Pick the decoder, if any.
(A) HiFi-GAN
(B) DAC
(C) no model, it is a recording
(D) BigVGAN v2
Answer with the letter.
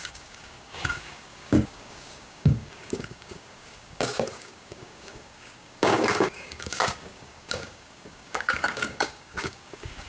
B